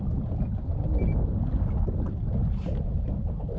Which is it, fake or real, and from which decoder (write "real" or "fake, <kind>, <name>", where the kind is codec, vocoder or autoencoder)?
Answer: real